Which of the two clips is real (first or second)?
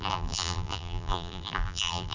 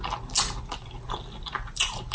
second